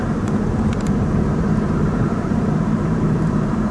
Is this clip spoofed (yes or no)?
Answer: yes